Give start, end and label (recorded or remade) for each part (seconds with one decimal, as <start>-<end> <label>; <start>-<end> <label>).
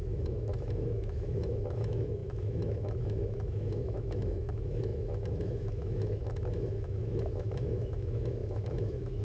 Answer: 0.0-9.2 remade